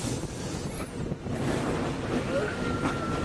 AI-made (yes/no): no